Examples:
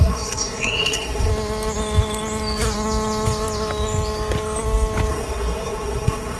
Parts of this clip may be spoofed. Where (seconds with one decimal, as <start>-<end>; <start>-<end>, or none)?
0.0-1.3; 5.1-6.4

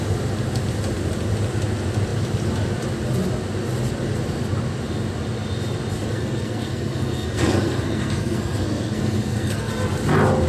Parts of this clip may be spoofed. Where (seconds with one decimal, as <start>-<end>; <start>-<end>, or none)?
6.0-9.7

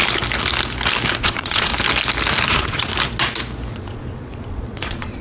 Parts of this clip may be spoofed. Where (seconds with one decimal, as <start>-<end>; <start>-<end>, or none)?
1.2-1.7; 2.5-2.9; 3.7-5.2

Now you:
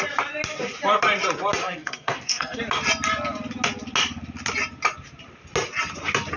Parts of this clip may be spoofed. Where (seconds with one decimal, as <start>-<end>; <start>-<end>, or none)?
1.6-2.6